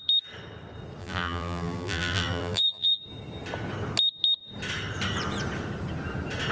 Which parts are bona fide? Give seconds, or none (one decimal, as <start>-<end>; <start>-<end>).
0.0-1.0; 3.0-6.5